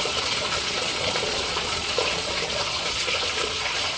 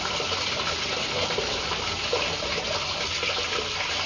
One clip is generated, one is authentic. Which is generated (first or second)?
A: first